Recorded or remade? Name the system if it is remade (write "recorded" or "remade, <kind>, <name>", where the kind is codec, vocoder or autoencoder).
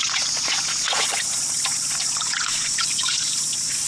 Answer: remade, vocoder, Vocos